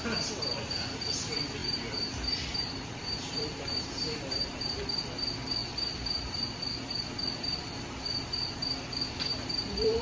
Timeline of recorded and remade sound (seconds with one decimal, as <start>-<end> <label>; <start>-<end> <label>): 0.0-1.6 recorded; 1.6-4.8 remade; 4.8-9.3 recorded; 9.3-10.0 remade